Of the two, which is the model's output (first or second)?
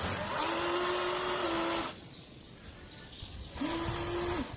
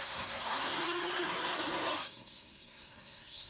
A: second